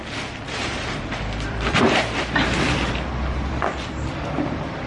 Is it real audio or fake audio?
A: fake